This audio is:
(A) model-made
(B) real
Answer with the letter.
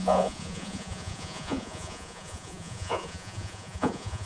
A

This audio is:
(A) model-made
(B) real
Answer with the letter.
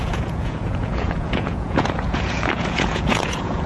A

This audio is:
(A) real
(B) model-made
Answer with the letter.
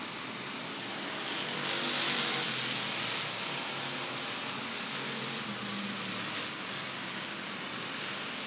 A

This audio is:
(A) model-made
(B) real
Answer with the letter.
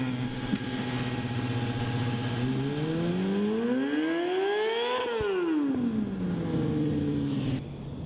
B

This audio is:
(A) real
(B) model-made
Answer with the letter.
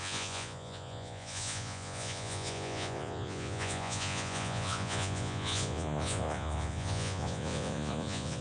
B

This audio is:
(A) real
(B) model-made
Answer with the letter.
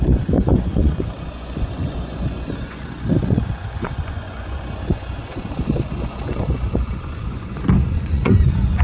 B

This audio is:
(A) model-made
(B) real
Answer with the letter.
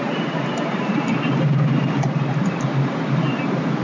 B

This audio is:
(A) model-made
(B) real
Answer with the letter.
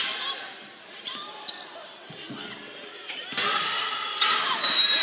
B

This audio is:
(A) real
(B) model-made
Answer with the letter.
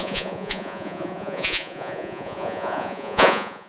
B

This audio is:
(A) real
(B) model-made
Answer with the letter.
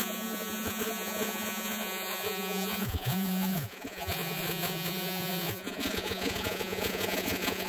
B